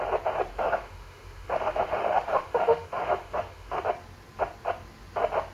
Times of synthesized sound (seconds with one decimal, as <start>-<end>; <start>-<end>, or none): 0.5-3.8